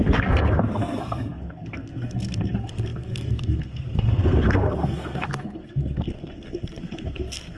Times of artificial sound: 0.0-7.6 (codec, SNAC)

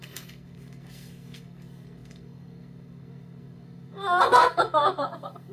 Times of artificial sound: 0.0-5.5 (codec, SNAC)

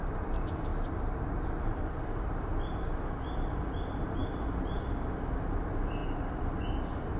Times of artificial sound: none

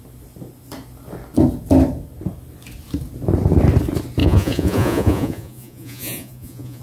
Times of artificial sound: 4.2-6.8 (vocoder, Vocos)

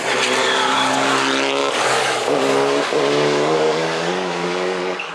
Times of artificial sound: 0.4-1.1 (codec, DAC); 1.6-5.1